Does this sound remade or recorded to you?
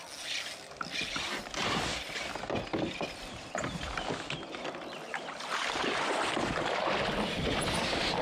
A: recorded